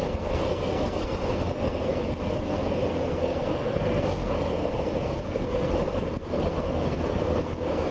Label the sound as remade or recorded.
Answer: remade